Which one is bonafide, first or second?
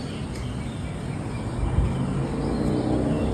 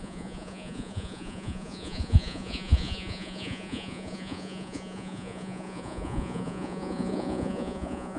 first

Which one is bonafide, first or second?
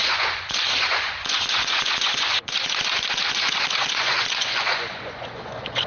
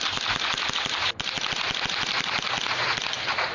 second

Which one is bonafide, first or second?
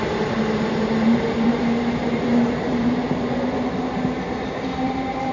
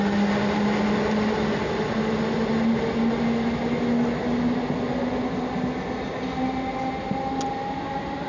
second